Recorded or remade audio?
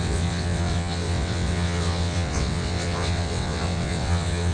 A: remade